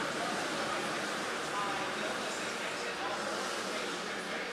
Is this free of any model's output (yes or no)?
yes